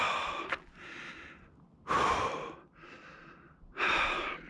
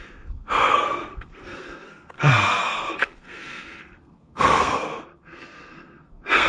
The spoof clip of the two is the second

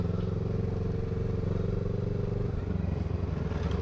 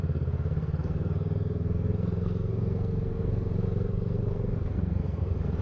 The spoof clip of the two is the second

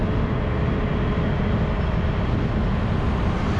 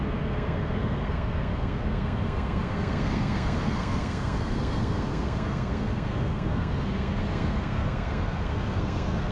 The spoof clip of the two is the second